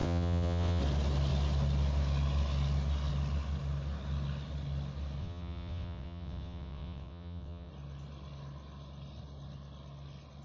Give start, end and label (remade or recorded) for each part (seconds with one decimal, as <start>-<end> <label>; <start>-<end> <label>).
0.0-0.8 remade; 0.8-5.2 recorded; 5.2-7.7 remade; 7.7-10.4 recorded